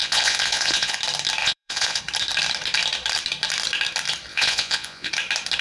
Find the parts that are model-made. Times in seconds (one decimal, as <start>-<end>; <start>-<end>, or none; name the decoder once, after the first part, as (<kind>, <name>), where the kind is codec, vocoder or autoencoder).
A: 0.0-1.0 (vocoder, Vocos); 1.4-2.0; 4.3-5.1